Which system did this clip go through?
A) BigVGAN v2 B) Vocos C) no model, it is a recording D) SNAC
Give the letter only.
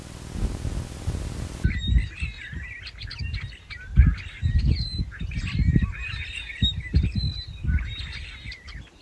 C